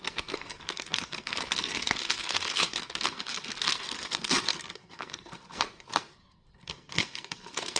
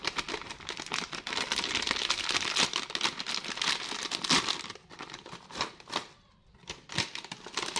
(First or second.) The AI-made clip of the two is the first